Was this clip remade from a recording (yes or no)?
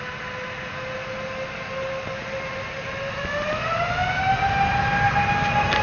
no